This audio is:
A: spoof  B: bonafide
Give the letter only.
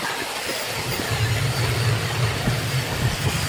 B